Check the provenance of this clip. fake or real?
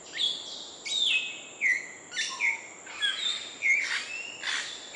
real